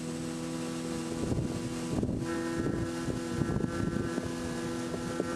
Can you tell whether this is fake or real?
real